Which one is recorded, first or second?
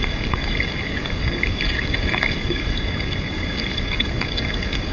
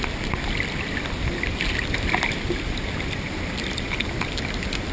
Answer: second